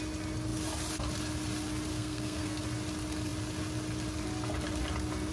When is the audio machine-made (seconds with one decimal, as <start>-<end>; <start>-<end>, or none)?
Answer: 1.9-2.6